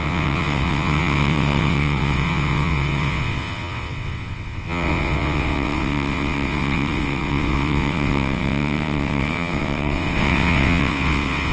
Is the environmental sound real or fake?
fake